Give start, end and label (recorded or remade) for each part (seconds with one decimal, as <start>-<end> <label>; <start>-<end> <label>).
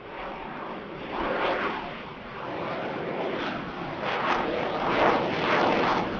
0.0-6.2 recorded